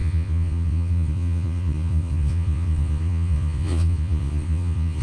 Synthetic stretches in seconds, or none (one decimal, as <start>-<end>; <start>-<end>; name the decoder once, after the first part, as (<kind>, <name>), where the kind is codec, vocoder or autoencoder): 0.0-5.0 (vocoder, Vocos)